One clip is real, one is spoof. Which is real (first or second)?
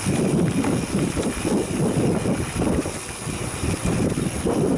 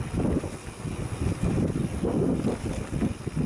second